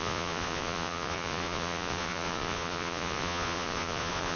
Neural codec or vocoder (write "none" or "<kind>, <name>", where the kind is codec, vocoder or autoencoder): vocoder, Vocos